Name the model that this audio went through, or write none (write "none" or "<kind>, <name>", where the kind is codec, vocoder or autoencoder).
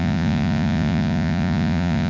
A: vocoder, Vocos